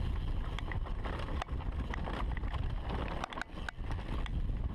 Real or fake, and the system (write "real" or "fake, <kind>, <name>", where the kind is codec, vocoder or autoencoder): real